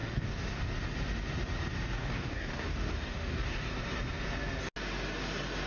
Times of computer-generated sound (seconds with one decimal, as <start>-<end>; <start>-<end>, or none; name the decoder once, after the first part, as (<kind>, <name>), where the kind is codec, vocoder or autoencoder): 0.0-0.6 (codec, DAC); 2.0-3.7